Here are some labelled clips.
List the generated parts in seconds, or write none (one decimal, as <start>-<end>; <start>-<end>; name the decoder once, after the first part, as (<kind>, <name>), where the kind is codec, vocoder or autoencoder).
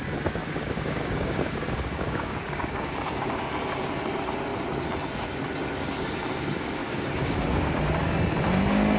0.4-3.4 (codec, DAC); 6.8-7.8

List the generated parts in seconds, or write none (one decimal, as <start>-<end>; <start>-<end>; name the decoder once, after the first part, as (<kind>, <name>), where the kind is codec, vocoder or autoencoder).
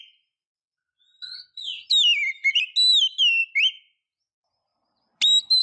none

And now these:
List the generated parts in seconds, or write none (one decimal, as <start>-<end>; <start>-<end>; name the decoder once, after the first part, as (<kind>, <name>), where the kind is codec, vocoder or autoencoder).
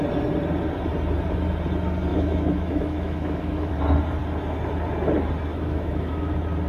2.1-3.7 (autoencoder, DAC-VAE); 5.5-6.3